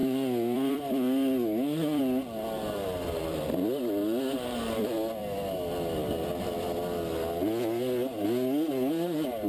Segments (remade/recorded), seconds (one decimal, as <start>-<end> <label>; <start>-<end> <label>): 0.0-5.2 remade; 5.2-8.9 recorded; 8.9-9.5 remade